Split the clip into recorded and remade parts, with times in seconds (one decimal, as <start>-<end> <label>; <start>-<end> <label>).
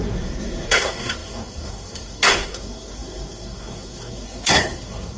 0.0-5.2 remade